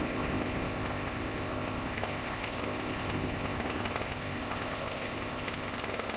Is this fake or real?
fake